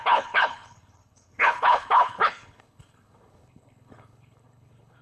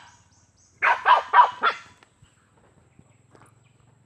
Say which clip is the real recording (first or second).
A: second